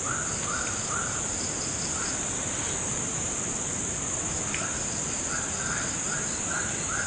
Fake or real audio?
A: real